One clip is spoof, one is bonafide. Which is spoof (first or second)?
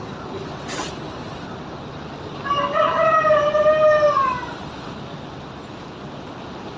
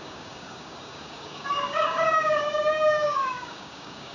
second